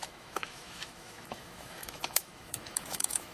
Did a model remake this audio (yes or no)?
yes